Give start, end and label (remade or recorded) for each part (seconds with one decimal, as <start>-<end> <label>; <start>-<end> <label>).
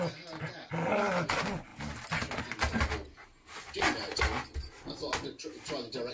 0.0-6.1 recorded